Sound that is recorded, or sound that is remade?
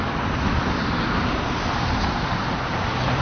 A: recorded